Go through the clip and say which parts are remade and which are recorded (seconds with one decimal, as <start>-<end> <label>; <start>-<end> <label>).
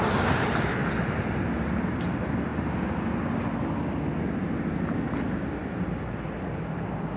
0.0-7.2 recorded